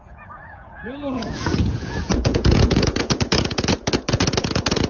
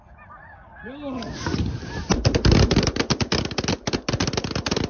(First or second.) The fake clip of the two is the first